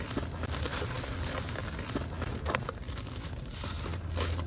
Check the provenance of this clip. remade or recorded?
recorded